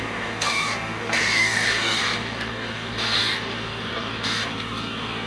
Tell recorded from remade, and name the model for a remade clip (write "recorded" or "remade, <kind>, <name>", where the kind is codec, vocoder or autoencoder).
remade, codec, DAC